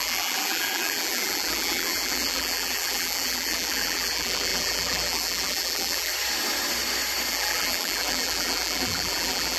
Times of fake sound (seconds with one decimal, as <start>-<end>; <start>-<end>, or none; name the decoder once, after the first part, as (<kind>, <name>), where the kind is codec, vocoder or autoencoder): 0.0-6.1 (vocoder, BigVGAN v2); 7.3-9.6